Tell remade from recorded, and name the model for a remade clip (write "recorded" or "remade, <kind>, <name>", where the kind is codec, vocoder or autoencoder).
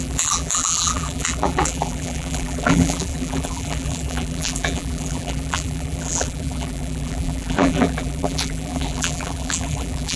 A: remade, vocoder, BigVGAN v2